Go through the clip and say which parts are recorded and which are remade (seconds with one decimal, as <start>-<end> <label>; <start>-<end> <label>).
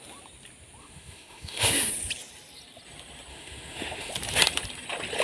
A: 0.0-0.8 recorded; 0.8-1.9 remade; 1.9-3.3 recorded; 3.3-4.1 remade; 4.1-5.2 recorded